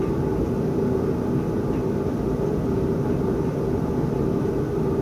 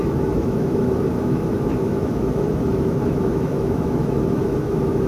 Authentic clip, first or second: first